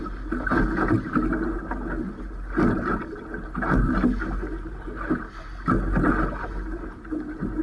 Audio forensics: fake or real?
real